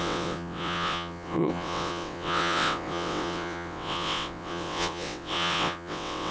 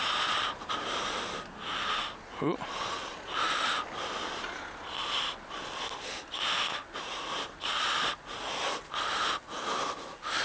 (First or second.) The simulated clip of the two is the first